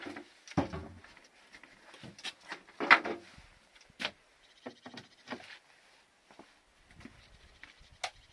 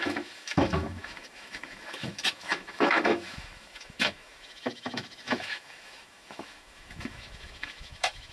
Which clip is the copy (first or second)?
second